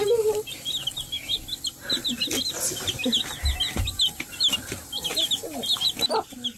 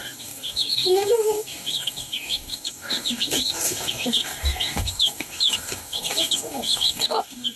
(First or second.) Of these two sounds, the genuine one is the first